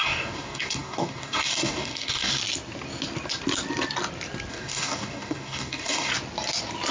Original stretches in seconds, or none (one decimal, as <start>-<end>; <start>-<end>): 2.4-4.5; 6.1-6.9